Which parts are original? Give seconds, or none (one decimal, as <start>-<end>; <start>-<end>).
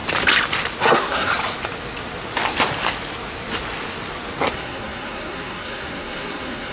0.0-0.8; 1.3-4.5